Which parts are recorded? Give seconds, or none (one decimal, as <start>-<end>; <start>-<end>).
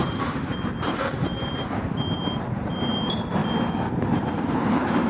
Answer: 3.4-4.1